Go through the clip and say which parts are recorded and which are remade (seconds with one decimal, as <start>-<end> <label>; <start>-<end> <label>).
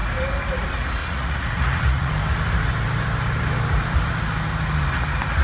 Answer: 0.0-1.0 recorded; 1.0-2.1 remade; 2.1-5.4 recorded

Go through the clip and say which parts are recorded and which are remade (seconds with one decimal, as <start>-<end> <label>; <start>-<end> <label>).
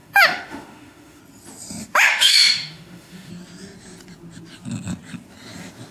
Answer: 0.0-1.2 remade; 1.2-1.8 recorded; 1.8-3.3 remade; 3.3-5.9 recorded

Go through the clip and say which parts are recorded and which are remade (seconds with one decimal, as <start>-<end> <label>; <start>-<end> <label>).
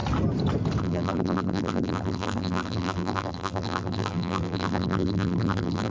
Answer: 0.0-0.8 recorded; 0.8-5.9 remade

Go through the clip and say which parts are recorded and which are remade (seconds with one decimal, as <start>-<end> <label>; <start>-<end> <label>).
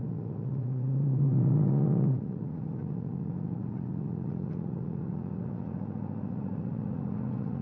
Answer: 0.0-7.6 remade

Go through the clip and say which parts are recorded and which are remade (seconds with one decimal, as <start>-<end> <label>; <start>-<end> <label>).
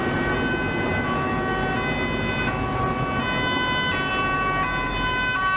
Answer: 0.0-5.6 recorded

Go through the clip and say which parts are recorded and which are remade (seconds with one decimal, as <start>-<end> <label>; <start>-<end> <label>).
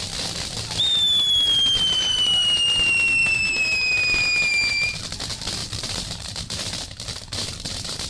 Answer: 0.0-3.2 recorded; 3.2-5.0 remade; 5.0-5.6 recorded; 5.6-8.1 remade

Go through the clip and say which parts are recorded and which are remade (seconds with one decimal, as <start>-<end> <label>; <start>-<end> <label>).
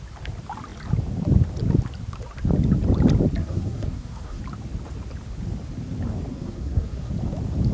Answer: 0.0-3.4 recorded; 3.4-4.4 remade; 4.4-6.3 recorded; 6.3-7.1 remade; 7.1-7.7 recorded